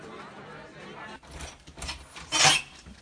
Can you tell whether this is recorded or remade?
recorded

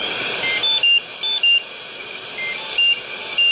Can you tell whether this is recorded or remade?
recorded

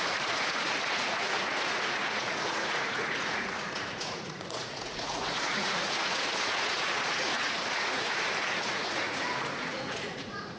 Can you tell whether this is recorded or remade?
remade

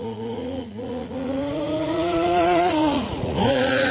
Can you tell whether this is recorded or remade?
remade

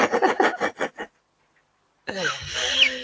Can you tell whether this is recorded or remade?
recorded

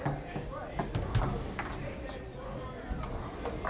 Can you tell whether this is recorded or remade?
recorded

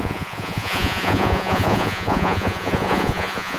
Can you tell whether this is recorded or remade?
remade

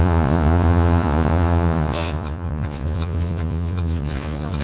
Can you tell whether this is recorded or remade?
remade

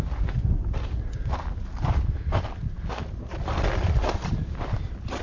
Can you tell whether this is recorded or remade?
recorded